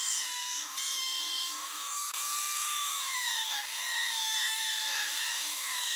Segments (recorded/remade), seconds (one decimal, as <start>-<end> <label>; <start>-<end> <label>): 0.0-6.0 remade